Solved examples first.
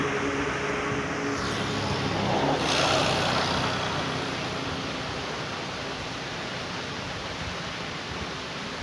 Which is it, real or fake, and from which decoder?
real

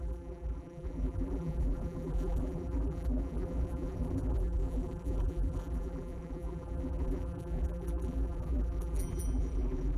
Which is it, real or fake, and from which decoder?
fake, vocoder, BigVGAN v2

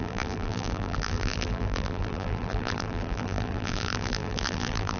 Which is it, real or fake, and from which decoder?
fake, vocoder, BigVGAN v2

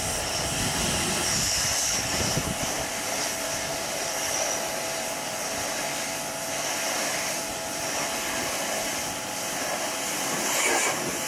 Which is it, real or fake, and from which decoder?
fake, vocoder, BigVGAN v2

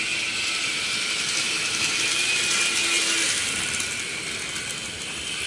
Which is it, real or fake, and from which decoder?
real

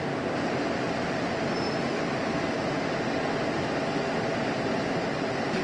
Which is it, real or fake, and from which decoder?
real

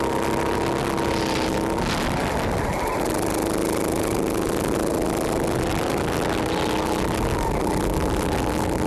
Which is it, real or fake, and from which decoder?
real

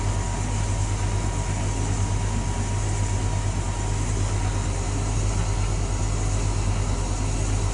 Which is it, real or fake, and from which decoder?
real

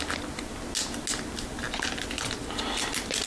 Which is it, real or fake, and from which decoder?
real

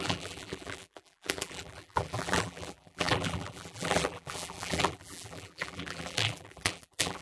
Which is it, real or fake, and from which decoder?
fake, vocoder, BigVGAN v2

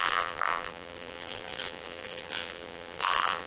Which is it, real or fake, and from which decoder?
fake, vocoder, BigVGAN v2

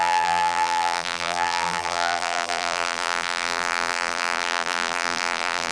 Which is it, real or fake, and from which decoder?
fake, vocoder, BigVGAN v2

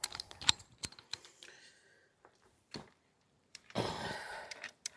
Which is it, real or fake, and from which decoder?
fake, vocoder, BigVGAN v2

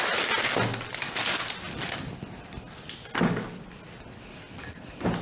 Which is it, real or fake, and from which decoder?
real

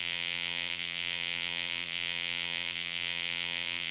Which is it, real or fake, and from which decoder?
fake, vocoder, BigVGAN v2